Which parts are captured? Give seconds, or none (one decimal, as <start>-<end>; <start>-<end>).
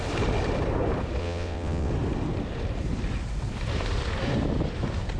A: 0.0-1.2; 1.9-5.2